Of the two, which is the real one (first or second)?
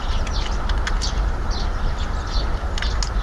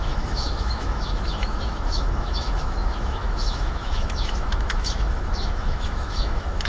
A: first